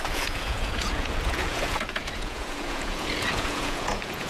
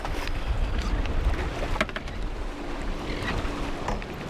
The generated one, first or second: first